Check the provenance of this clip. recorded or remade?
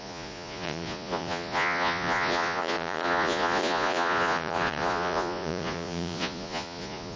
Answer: remade